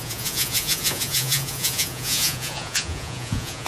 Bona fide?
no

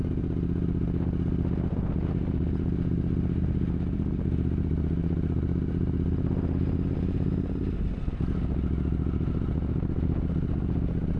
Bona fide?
yes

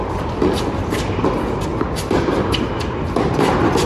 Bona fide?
yes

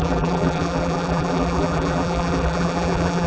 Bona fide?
no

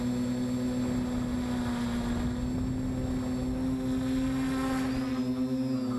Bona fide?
yes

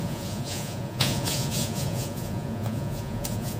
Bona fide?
no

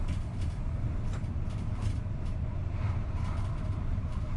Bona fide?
no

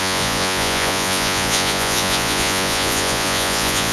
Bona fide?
no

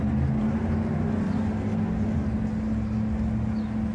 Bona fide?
yes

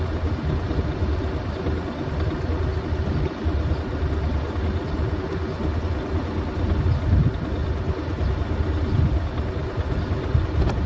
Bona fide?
yes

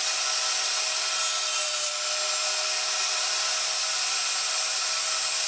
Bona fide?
yes